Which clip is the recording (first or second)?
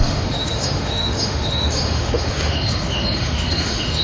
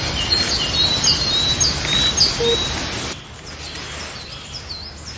second